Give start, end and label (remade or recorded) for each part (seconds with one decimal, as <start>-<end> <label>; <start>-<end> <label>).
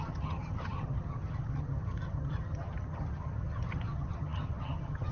0.0-5.1 remade